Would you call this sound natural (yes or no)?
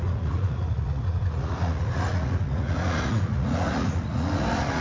no